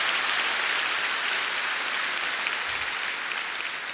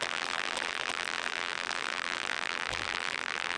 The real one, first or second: first